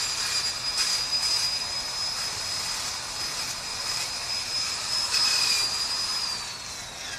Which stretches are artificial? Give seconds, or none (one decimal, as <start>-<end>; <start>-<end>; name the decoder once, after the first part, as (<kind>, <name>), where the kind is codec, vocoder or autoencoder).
2.0-2.6 (vocoder, BigVGAN v2); 3.7-5.5